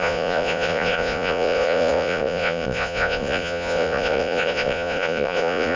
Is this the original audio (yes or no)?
no